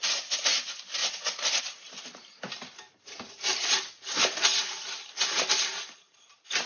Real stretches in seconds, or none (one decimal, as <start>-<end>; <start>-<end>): 0.0-6.7